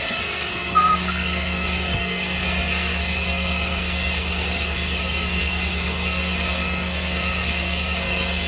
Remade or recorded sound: remade